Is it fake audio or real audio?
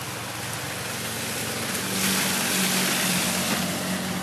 real